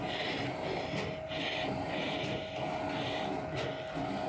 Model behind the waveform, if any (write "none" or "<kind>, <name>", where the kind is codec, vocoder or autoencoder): none